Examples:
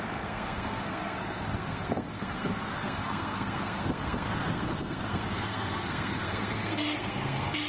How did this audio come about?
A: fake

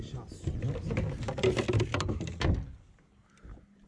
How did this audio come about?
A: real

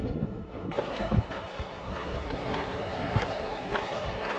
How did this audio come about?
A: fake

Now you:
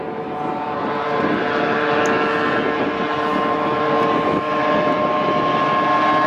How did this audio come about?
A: real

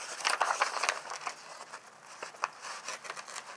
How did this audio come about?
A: real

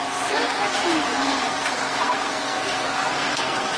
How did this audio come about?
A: fake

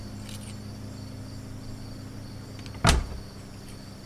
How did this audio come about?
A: real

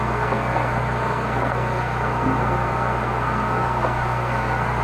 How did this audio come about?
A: fake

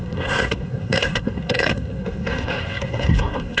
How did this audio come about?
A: fake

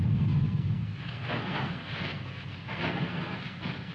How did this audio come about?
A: fake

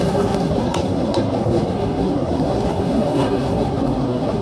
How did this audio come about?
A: fake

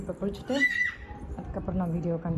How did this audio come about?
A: real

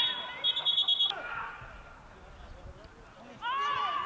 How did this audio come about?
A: real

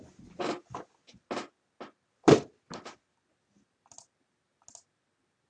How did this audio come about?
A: real